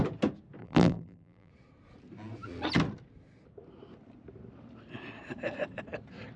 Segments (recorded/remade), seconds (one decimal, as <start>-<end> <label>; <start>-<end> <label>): 0.0-0.6 recorded; 0.6-1.5 remade; 1.5-6.4 recorded